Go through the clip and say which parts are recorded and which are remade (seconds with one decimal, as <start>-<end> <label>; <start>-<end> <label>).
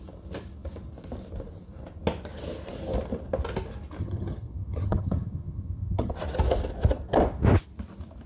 0.0-4.0 recorded; 4.0-6.1 remade; 6.1-8.3 recorded